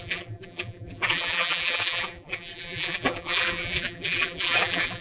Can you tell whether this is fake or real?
fake